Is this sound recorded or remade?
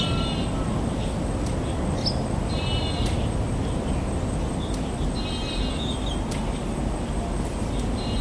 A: recorded